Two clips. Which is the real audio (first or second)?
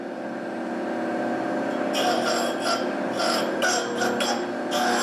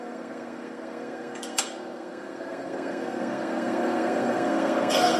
first